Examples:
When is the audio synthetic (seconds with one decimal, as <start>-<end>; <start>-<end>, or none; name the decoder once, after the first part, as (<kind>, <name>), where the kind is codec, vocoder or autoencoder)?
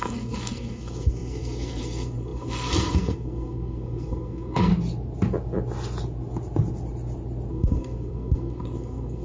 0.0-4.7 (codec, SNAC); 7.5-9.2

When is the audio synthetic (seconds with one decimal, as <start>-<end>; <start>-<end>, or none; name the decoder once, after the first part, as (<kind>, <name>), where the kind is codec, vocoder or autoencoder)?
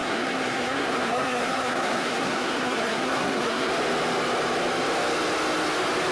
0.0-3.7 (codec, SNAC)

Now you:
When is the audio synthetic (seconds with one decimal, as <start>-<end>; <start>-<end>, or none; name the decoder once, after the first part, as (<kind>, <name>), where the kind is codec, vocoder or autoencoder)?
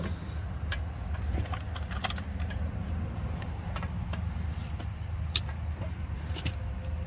none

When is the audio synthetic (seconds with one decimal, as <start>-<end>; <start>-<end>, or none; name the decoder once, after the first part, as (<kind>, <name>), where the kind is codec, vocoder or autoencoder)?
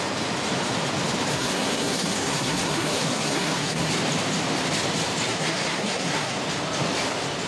1.3-3.9 (codec, SNAC); 5.3-6.4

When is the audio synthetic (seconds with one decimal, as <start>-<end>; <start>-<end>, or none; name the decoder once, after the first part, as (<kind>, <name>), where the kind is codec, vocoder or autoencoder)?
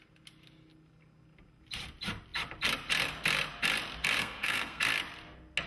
4.2-4.8 (codec, SNAC)